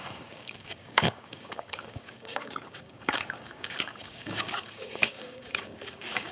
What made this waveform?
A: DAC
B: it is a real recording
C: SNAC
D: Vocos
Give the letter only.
A